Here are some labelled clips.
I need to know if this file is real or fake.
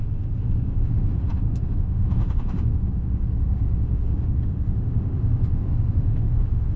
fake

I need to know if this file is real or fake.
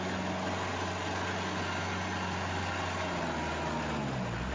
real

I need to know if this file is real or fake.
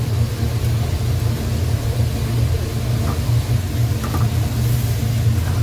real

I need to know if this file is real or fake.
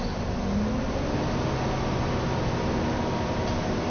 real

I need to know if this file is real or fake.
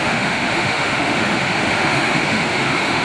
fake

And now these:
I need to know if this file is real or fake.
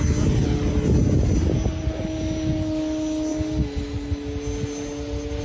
real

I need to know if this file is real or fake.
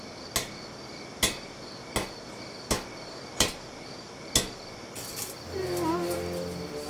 real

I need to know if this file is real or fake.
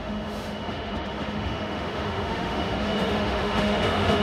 fake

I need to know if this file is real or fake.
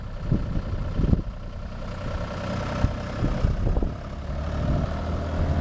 real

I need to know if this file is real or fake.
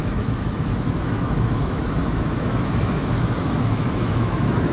fake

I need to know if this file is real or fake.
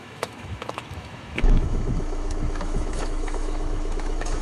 fake